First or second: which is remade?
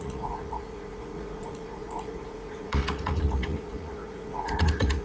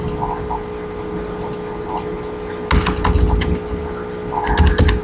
first